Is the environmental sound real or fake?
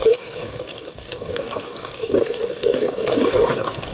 fake